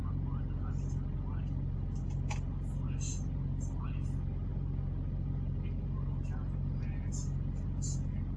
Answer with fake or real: real